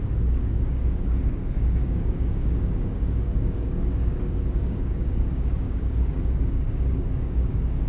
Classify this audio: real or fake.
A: fake